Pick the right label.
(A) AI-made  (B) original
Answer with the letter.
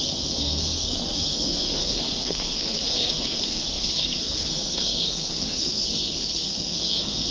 A